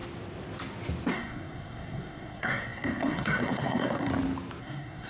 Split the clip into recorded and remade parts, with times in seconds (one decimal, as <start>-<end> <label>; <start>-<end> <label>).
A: 0.0-1.1 recorded; 1.1-4.1 remade; 4.1-4.6 recorded; 4.6-5.1 remade